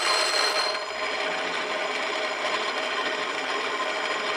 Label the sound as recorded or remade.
recorded